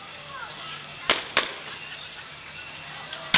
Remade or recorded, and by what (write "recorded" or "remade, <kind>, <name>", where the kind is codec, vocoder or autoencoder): recorded